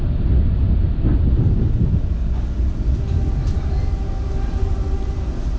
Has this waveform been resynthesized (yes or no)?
no